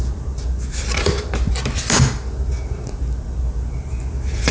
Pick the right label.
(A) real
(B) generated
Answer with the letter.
A